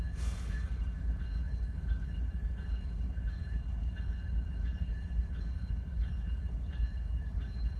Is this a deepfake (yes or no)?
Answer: yes